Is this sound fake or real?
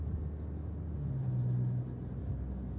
real